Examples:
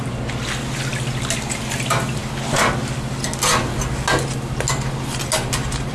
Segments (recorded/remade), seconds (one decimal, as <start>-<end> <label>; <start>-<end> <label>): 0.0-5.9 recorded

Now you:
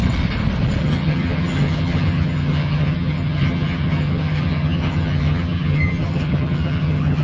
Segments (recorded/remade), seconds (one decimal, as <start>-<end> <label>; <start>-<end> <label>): 0.0-0.8 recorded; 0.8-7.2 remade

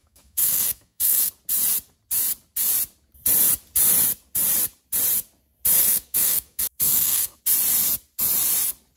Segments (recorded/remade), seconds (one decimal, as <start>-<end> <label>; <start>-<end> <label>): 0.0-1.3 remade; 1.3-5.8 recorded; 5.8-7.4 remade; 7.4-9.0 recorded